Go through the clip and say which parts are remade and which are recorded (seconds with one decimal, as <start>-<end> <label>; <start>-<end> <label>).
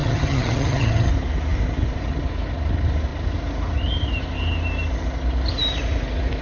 0.0-1.1 remade; 1.1-6.4 recorded